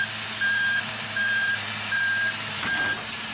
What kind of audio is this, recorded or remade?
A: remade